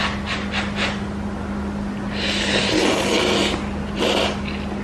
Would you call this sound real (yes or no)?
yes